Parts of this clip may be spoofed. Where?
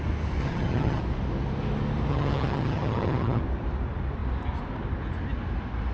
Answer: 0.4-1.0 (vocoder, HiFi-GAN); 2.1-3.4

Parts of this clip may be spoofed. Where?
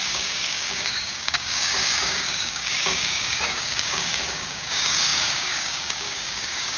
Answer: 0.0-6.8 (codec, DAC)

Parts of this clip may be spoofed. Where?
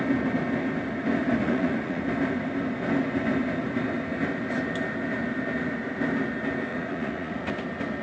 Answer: 1.4-2.0 (vocoder, Vocos); 6.7-7.5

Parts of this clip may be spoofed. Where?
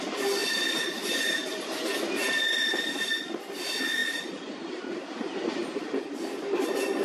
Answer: 0.4-1.2 (vocoder, BigVGAN v2); 2.2-3.2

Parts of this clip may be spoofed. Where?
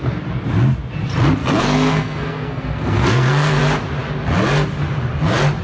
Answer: 1.4-3.6 (codec, SNAC)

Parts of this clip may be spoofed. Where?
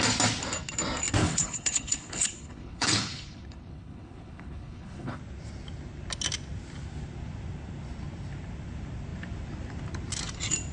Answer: 1.2-5.2 (codec, HILCodec)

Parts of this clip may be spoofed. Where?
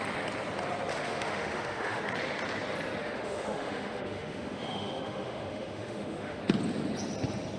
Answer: 0.9-2.0 (autoencoder, DAC-VAE); 3.0-6.4